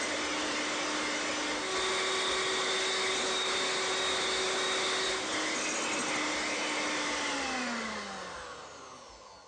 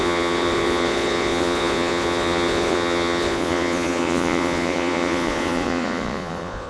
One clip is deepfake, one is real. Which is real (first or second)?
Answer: first